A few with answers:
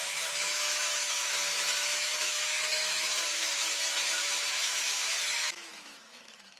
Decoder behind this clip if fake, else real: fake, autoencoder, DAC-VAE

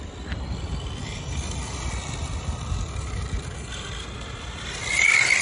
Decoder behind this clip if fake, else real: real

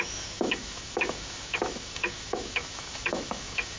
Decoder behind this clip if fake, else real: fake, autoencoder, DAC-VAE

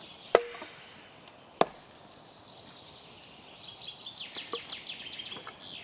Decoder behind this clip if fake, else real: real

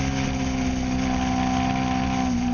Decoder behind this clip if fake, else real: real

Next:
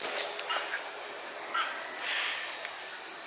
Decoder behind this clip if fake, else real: real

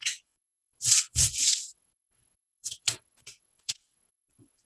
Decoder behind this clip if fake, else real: fake, vocoder, WaveNeXt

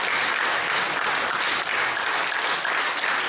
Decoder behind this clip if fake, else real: real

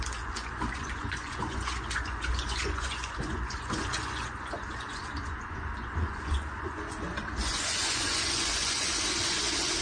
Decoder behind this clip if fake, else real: fake, vocoder, Vocos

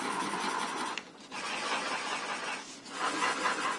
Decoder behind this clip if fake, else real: fake, vocoder, Vocos